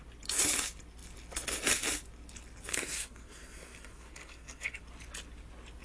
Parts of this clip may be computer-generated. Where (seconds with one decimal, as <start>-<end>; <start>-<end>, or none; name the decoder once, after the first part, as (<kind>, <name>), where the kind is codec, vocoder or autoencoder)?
2.7-4.8 (codec, SNAC)